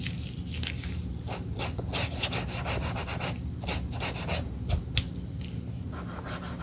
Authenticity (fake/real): real